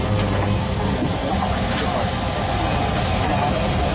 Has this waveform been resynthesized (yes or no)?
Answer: no